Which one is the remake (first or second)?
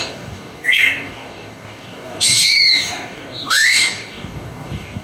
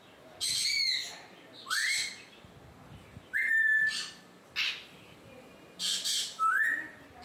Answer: first